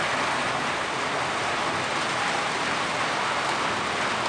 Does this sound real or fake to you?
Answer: real